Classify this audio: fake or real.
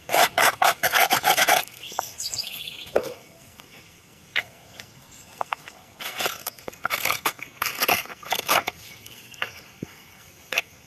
fake